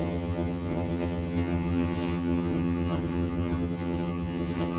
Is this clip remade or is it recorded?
remade